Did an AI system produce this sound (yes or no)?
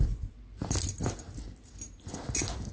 no